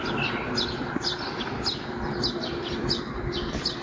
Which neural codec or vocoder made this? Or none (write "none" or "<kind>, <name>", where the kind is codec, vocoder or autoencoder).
none